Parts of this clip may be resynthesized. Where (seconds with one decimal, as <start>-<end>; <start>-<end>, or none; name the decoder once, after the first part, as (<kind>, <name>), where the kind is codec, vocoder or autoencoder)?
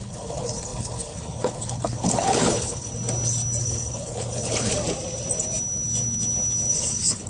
0.0-2.9 (codec, HILCodec); 3.6-4.7; 6.7-7.3